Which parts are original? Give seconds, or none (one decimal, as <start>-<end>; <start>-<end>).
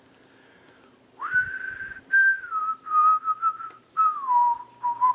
0.0-5.1